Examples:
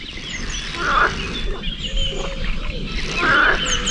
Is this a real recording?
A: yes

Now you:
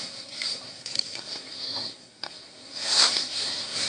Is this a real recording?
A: no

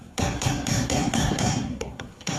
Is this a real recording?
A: no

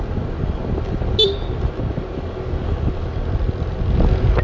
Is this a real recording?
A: yes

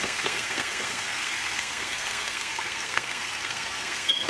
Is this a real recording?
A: no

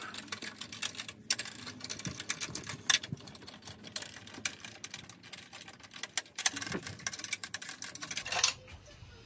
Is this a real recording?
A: yes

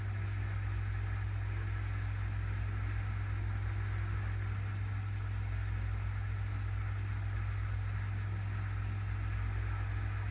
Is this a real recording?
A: yes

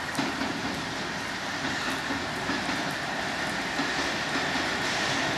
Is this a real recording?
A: yes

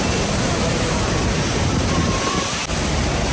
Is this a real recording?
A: yes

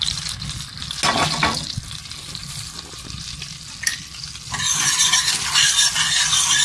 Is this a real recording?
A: yes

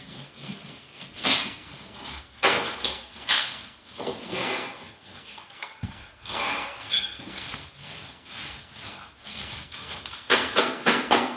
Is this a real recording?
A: no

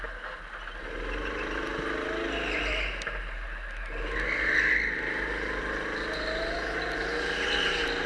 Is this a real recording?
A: yes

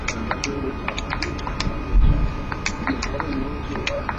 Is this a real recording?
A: yes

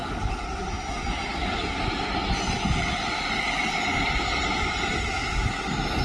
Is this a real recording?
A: yes